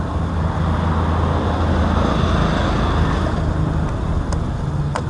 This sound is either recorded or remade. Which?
recorded